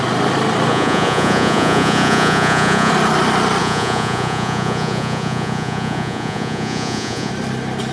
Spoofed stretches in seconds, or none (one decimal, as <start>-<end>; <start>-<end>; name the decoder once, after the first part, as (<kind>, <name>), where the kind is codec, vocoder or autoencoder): 0.7-2.9 (vocoder, Vocos); 3.6-7.3